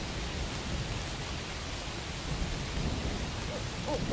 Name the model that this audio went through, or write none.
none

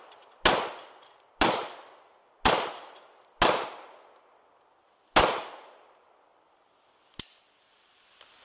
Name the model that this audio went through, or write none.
none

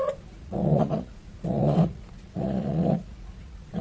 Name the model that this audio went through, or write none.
vocoder, Vocos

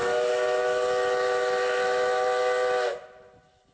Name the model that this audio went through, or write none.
none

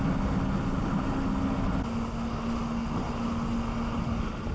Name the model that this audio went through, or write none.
none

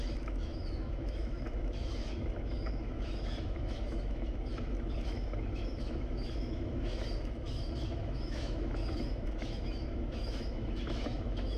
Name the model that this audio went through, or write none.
autoencoder, DAC-VAE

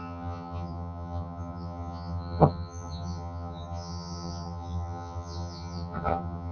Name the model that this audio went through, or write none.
vocoder, HiFi-GAN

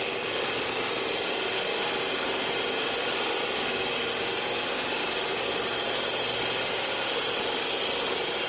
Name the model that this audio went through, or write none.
none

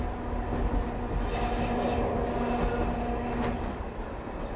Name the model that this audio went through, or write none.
none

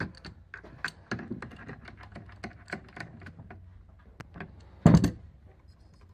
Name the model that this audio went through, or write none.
none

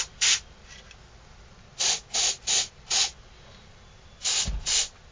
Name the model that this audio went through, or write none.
none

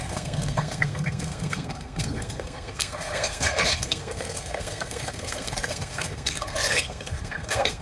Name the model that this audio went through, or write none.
codec, SNAC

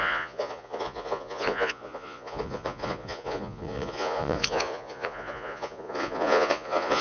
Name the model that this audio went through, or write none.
vocoder, Vocos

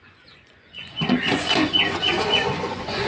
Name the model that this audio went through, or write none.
vocoder, Vocos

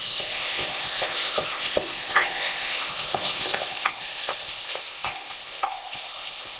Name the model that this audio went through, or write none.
codec, ZipCodec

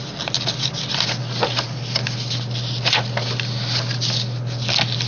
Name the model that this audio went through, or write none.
none